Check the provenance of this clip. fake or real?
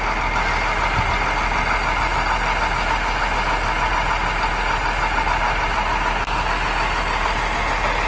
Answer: real